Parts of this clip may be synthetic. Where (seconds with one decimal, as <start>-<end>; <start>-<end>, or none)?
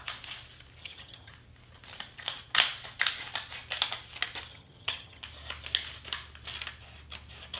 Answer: 0.8-1.3; 4.5-5.2